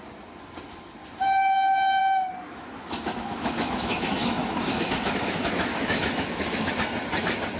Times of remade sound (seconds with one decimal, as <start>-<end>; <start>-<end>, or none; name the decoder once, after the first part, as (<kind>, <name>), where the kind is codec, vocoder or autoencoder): 2.5-6.7 (autoencoder, DAC-VAE)